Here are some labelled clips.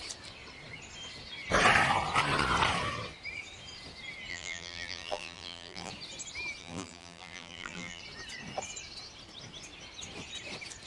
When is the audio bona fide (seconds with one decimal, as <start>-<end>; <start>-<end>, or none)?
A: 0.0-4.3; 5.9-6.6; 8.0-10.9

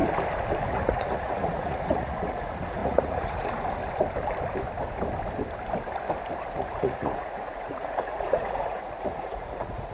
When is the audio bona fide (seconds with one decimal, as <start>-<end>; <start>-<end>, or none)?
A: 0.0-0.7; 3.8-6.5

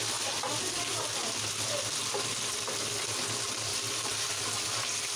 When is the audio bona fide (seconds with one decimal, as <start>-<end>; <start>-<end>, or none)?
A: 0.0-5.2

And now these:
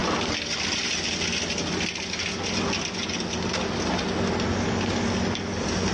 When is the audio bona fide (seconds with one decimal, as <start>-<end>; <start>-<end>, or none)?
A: 0.0-5.9